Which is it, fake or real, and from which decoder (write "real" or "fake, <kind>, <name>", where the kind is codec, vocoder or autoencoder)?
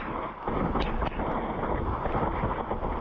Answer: real